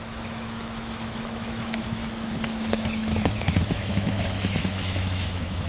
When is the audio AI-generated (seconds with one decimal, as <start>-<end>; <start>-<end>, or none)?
0.0-2.0; 2.7-5.7